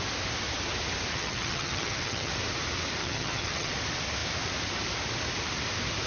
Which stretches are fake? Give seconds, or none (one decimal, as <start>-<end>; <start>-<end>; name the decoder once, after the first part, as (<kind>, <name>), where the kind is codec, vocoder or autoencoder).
1.1-2.3 (vocoder, HiFi-GAN); 3.0-3.7